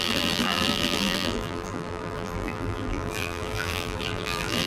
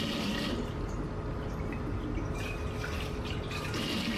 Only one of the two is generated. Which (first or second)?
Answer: first